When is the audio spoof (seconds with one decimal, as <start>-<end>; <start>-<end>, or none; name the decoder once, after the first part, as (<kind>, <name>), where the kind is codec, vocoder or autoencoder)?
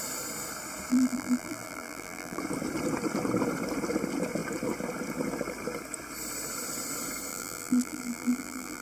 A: 0.9-2.4 (vocoder, BigVGAN v2); 7.3-8.8